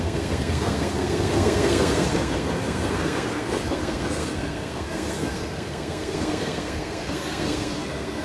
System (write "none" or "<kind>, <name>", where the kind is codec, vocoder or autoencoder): codec, SNAC